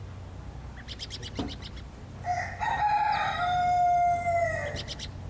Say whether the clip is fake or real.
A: real